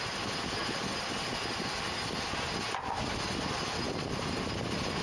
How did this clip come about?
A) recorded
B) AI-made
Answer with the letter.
A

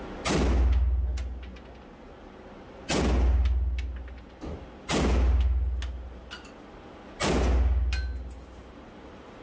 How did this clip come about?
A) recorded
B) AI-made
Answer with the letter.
A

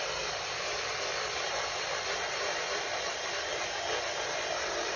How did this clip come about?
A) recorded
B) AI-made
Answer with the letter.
A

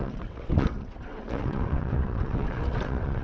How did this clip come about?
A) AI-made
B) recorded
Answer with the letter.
A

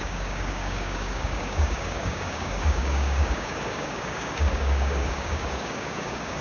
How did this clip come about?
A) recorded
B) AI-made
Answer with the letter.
B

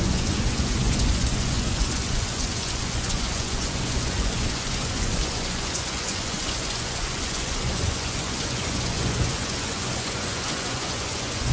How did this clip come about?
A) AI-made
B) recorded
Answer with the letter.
A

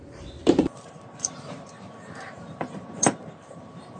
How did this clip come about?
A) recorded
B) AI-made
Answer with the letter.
B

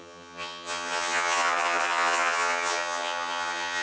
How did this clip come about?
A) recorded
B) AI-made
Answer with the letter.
B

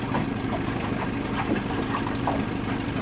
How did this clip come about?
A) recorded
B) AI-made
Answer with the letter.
A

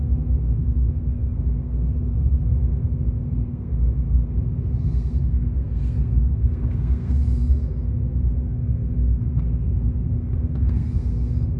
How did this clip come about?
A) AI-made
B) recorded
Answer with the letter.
A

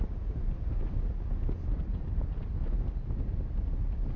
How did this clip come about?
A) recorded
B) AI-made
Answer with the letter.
A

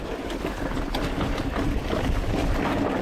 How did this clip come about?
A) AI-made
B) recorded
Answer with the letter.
B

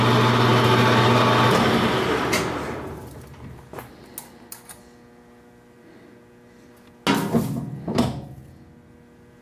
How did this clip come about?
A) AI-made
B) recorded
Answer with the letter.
B